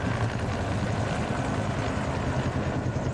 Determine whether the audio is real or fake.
real